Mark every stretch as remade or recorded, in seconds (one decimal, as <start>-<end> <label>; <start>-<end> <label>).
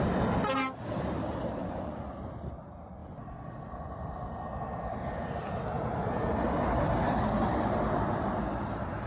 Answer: 0.0-1.6 recorded; 1.6-2.2 remade; 2.2-9.1 recorded